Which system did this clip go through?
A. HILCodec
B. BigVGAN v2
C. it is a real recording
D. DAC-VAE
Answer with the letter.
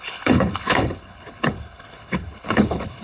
A